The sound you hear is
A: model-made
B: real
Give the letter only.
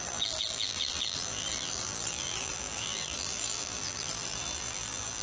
A